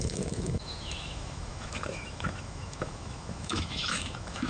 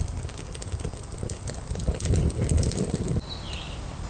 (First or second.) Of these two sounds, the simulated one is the first